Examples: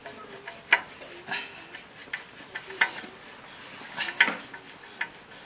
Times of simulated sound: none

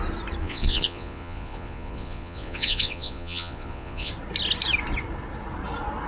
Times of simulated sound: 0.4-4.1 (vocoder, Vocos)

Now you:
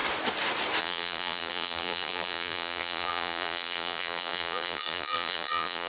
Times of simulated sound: 0.8-5.9 (vocoder, BigVGAN v2)

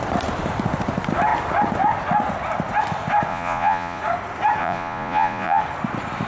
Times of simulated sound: 3.3-4.0 (vocoder, Vocos); 4.6-5.6

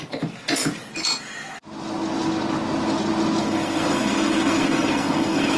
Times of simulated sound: 3.4-5.6 (codec, SNAC)

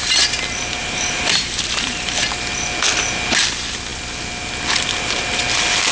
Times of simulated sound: 0.8-2.2 (vocoder, BigVGAN v2)